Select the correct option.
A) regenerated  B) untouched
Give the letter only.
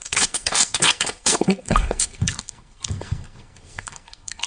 A